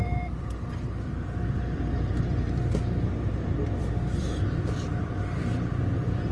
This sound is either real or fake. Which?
fake